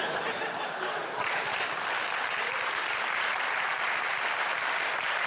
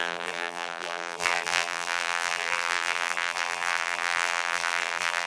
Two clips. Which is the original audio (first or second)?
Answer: first